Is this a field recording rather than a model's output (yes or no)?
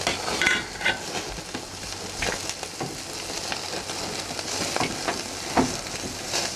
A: yes